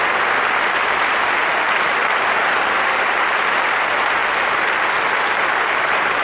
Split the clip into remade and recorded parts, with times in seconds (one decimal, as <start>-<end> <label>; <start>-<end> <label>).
0.0-6.2 recorded